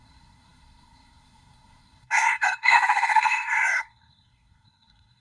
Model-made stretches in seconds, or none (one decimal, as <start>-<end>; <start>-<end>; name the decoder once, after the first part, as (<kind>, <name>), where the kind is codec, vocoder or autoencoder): 0.0-5.2 (codec, SNAC)